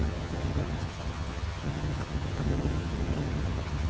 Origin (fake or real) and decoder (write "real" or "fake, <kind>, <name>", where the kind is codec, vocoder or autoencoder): fake, vocoder, HiFi-GAN